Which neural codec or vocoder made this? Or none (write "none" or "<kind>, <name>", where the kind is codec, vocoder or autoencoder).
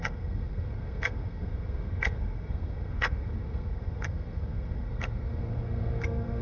codec, SNAC